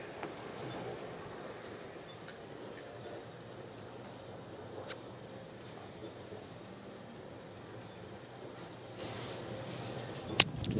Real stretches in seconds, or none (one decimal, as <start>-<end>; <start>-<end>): 0.0-9.0; 10.4-10.8